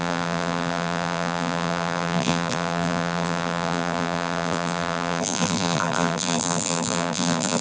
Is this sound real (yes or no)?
no